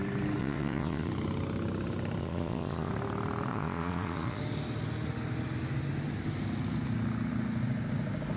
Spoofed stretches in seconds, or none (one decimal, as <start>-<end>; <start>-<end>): 0.4-1.1; 2.2-2.9; 3.5-4.4